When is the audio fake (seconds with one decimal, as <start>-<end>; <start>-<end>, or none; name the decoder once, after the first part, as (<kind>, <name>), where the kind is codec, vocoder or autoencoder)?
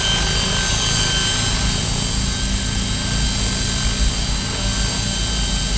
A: none